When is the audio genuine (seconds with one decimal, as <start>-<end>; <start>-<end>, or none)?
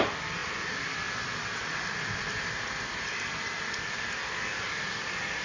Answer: 0.0-0.4; 3.6-5.4